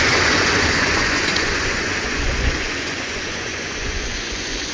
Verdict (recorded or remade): remade